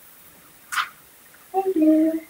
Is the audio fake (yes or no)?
yes